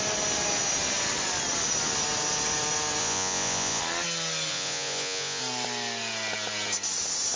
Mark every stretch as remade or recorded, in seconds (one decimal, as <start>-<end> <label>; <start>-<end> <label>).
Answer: 0.0-3.0 recorded; 3.0-3.8 remade; 3.8-4.5 recorded; 4.5-5.4 remade; 5.4-7.4 recorded